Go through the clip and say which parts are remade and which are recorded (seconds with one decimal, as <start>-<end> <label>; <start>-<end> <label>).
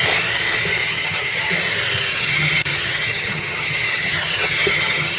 0.0-0.8 recorded; 0.8-1.5 remade; 1.5-2.1 recorded; 2.1-5.2 remade